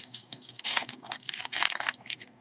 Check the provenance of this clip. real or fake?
fake